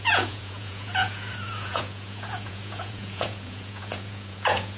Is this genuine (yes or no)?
no